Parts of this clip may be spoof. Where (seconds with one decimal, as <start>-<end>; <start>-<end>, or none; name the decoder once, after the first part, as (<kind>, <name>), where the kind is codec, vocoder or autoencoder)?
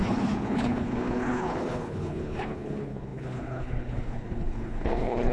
0.0-5.3 (codec, HILCodec)